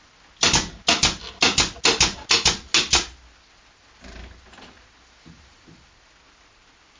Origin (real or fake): real